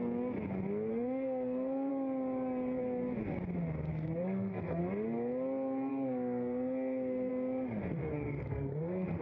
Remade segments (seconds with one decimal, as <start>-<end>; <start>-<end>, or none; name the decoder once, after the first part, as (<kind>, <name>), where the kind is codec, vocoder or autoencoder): 0.9-1.9 (codec, SNAC); 3.9-4.8; 5.9-7.3; 8.0-9.2